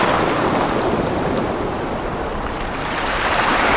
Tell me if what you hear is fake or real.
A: real